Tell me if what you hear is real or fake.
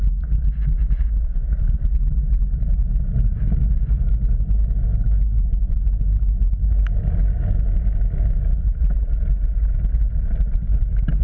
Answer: real